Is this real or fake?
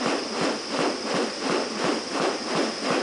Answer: real